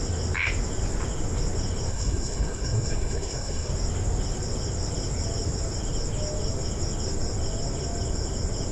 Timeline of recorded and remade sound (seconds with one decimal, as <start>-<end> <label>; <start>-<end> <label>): 0.0-1.9 recorded; 1.9-3.7 remade; 3.7-8.7 recorded